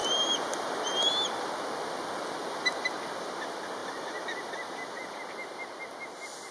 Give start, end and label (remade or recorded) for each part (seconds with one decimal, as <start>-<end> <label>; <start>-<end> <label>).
0.0-0.8 remade; 0.8-3.8 recorded; 3.8-5.2 remade; 5.2-6.5 recorded